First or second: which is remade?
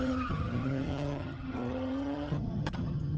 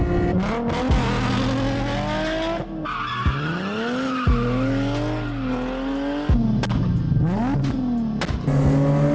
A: first